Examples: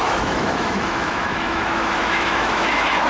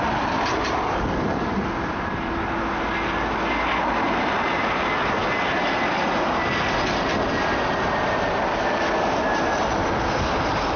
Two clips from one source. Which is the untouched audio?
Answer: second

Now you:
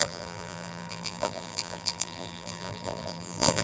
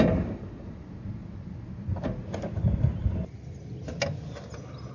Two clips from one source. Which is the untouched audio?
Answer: second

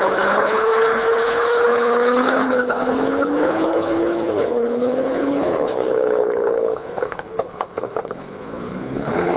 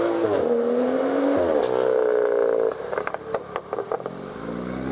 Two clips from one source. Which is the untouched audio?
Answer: second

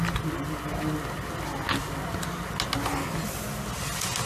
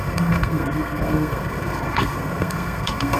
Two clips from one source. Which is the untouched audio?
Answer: first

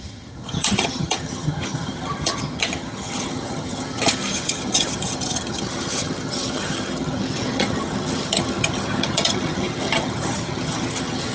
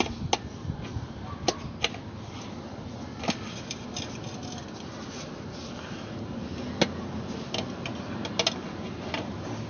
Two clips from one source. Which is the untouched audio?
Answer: second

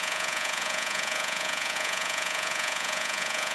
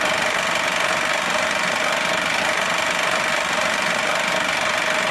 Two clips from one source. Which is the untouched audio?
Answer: second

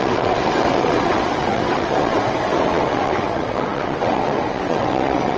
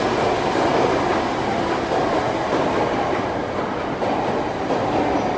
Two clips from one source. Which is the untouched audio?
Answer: second